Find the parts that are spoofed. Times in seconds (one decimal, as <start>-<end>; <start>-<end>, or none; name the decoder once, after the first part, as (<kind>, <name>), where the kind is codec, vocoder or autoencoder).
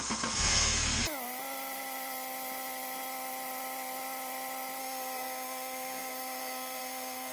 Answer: 0.0-1.0 (codec, SNAC); 4.8-7.3